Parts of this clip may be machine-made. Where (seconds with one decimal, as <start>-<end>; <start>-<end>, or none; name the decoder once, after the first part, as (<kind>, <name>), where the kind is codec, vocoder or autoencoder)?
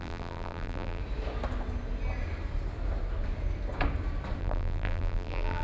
0.0-1.0 (vocoder, BigVGAN v2); 4.4-5.6